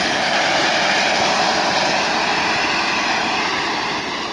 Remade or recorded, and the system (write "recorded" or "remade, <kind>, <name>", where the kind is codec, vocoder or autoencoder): remade, vocoder, BigVGAN v2